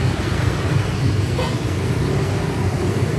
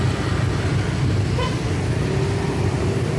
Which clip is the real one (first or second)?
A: second